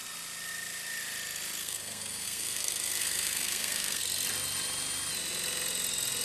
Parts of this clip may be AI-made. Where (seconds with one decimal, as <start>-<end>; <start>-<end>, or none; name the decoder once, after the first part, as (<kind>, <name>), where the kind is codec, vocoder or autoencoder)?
1.6-4.0 (codec, SNAC)